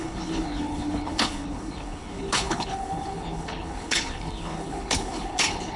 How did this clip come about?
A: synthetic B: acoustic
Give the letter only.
A